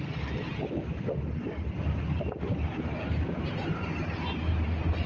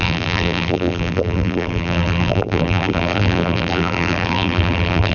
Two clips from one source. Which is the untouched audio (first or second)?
first